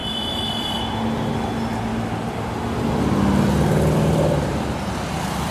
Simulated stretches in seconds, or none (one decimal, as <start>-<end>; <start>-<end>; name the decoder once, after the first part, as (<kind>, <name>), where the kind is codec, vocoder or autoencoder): 0.0-0.8 (vocoder, BigVGAN v2)